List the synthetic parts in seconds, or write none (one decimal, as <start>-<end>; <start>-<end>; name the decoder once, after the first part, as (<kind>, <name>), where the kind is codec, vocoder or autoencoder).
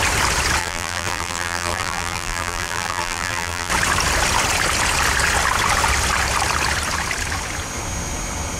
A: 0.6-3.7 (vocoder, BigVGAN v2)